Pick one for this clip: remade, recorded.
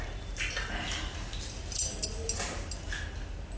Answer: recorded